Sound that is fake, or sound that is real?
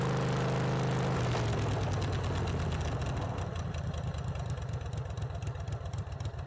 real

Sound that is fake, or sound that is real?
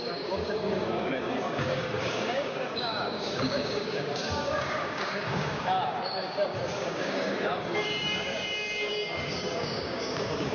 fake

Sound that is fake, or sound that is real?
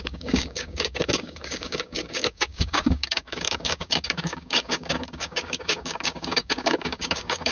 fake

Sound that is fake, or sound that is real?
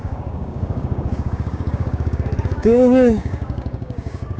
fake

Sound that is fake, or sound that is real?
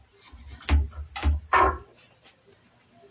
real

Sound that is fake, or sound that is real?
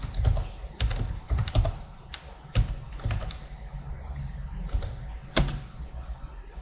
real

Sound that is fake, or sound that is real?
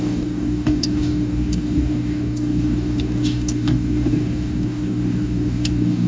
fake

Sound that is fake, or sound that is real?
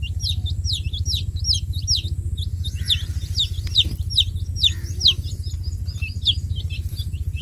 real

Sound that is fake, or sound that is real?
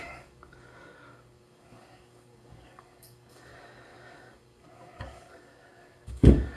fake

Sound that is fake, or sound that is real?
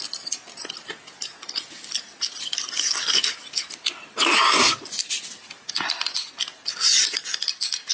real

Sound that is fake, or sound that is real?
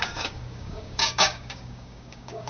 fake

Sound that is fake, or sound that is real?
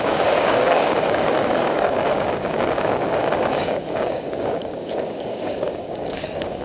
fake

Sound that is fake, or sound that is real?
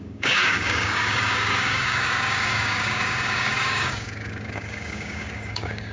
fake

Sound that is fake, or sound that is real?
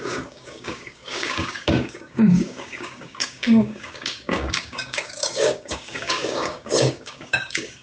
fake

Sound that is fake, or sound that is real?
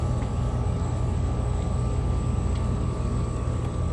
fake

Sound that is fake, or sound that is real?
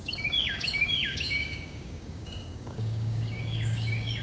fake